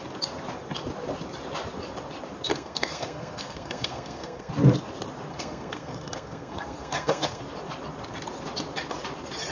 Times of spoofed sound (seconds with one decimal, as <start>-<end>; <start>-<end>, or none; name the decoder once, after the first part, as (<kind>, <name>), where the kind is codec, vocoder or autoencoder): 2.5-4.5 (codec, SNAC); 5.3-7.4